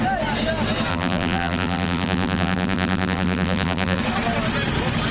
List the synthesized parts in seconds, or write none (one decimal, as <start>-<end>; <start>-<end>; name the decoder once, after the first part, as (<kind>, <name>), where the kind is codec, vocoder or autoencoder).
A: 0.9-4.0 (vocoder, BigVGAN v2)